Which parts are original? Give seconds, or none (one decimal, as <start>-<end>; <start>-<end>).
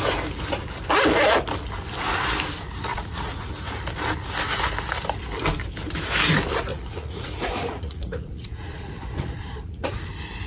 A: 0.0-2.9; 3.5-6.7; 10.1-10.5